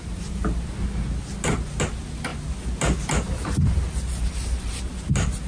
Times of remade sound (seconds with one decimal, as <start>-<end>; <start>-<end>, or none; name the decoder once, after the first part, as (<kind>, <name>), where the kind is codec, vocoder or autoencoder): none